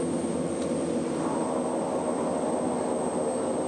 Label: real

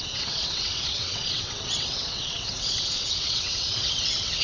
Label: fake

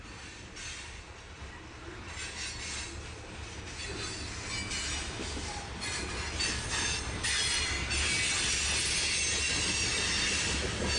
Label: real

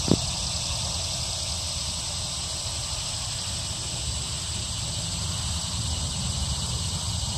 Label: real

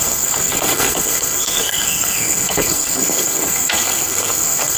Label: fake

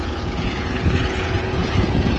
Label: fake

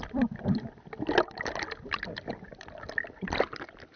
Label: real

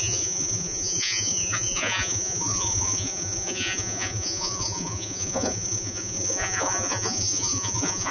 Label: fake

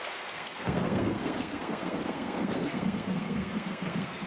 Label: fake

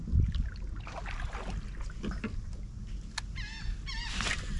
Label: real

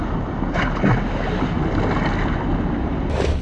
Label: real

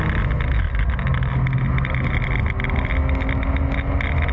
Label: real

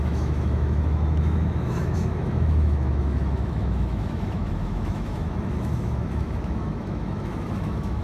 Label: fake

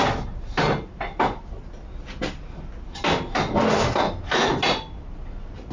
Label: real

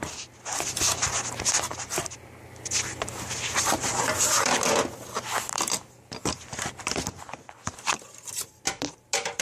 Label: real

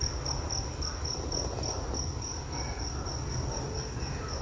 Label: real